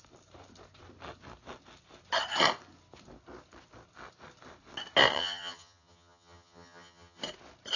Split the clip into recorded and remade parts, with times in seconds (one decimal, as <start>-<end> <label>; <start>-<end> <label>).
0.0-5.1 recorded; 5.1-7.2 remade; 7.2-7.8 recorded